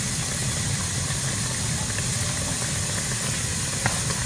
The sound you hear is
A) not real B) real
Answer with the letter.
B